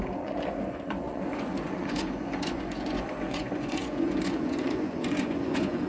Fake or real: fake